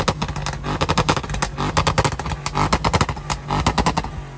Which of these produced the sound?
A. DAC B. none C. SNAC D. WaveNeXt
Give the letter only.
B